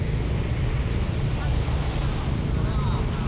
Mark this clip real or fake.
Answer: real